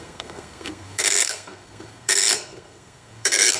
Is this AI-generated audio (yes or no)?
yes